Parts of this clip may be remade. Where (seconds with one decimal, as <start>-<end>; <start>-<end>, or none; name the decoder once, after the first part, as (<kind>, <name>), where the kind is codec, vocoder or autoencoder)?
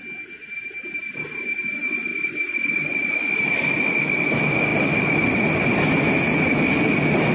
2.1-3.5 (vocoder, BigVGAN v2); 4.7-5.4